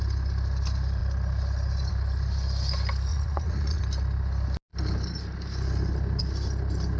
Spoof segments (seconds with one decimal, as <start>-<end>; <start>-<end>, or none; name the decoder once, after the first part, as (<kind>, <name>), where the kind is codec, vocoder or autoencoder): 3.1-3.8 (vocoder, Vocos)

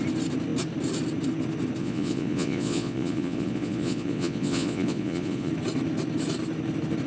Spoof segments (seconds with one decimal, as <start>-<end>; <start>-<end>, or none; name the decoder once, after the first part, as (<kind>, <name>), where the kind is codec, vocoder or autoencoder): 1.8-5.5 (vocoder, Vocos)

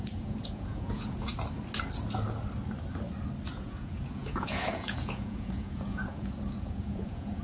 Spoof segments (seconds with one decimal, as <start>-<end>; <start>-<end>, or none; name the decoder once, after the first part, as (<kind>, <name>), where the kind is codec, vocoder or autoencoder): 0.0-1.3 (vocoder, Vocos); 3.5-7.4

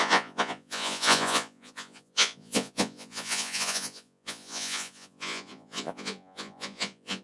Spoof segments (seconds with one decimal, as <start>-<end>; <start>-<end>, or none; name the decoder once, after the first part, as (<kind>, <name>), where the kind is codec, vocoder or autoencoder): 0.0-7.2 (vocoder, Vocos)

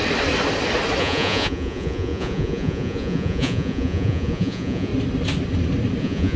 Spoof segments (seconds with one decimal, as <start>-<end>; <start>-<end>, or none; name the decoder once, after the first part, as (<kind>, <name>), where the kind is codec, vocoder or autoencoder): 1.0-4.9 (vocoder, Vocos); 6.0-6.4

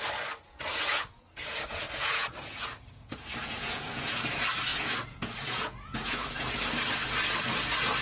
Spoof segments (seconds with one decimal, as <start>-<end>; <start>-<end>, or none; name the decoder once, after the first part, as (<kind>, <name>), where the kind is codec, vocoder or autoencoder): 0.7-4.3 (vocoder, Vocos); 4.7-6.5

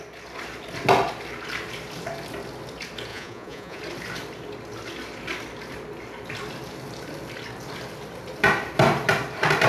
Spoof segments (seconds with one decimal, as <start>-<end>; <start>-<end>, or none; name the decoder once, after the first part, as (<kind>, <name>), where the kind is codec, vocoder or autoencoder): 3.1-3.8 (vocoder, Vocos)

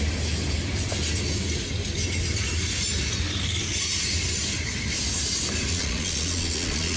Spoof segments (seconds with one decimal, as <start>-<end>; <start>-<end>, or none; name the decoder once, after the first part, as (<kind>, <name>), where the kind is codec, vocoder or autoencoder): 5.7-7.0 (vocoder, Vocos)